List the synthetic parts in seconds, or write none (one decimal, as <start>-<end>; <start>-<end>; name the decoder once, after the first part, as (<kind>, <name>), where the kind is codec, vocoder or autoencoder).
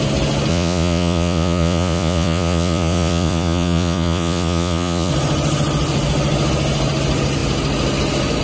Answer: 0.5-5.1 (vocoder, Vocos)